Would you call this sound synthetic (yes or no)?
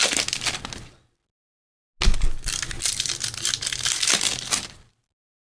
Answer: no